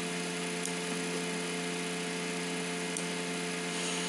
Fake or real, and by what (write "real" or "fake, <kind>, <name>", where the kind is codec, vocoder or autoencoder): real